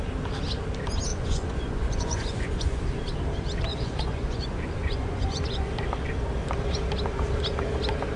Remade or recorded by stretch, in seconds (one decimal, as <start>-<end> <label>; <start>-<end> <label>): 0.0-1.1 recorded; 1.1-2.8 remade; 2.8-3.7 recorded; 3.7-5.7 remade; 5.7-8.2 recorded